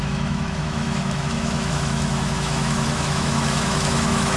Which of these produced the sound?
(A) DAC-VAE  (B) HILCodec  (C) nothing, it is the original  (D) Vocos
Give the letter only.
A